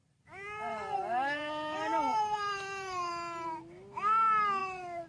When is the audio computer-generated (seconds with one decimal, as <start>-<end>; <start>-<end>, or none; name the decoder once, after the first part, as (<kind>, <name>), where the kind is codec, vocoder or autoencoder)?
0.0-3.1 (vocoder, BigVGAN v2); 4.6-5.1